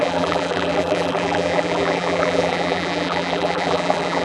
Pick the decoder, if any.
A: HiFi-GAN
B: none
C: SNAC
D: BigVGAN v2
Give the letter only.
D